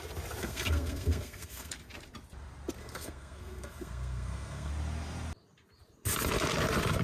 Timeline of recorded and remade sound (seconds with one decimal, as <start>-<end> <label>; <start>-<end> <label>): 0.0-0.4 recorded; 0.4-1.7 remade; 1.7-2.8 recorded; 2.8-4.7 remade; 4.7-7.0 recorded